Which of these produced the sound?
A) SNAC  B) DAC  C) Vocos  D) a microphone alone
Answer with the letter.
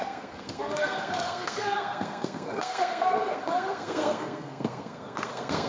A